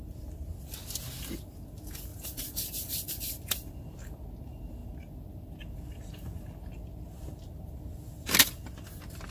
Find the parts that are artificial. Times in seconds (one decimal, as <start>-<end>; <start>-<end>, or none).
2.1-3.1